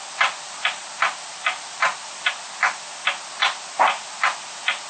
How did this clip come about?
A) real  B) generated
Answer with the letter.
A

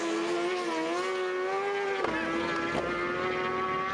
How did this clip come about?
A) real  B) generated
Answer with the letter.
A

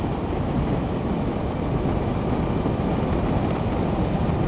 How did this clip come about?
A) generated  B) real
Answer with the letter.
B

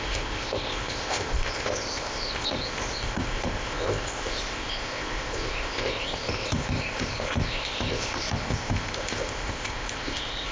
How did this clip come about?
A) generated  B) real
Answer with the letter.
A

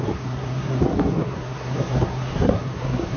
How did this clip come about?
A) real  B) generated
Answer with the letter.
B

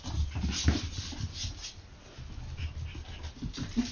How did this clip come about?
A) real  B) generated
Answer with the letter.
A